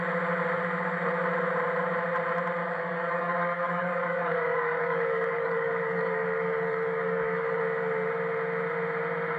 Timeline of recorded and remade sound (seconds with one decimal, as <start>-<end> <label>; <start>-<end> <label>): 0.0-2.6 recorded; 2.6-7.6 remade; 7.6-9.4 recorded